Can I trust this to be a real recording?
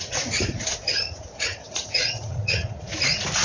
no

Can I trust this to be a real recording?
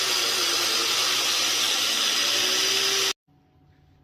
yes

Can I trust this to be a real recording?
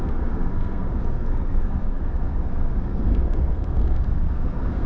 no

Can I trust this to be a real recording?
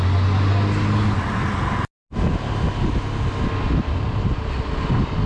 yes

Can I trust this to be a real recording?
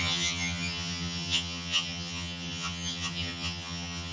no